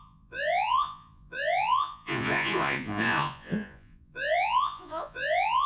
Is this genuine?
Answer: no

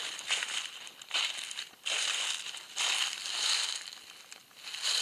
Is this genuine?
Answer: yes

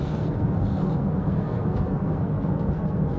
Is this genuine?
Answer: no